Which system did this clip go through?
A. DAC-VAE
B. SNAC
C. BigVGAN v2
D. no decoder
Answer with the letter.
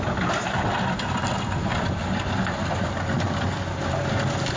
D